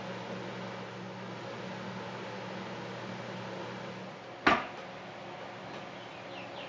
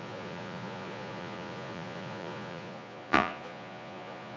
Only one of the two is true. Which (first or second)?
first